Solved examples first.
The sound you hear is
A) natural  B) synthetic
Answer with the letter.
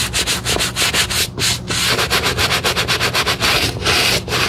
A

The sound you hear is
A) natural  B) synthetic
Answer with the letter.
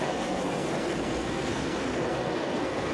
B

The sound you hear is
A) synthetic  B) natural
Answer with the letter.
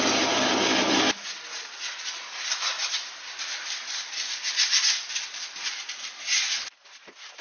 B